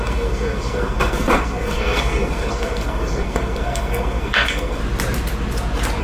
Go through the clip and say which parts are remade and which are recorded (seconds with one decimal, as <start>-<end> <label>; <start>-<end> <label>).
0.0-4.8 remade; 4.8-6.0 recorded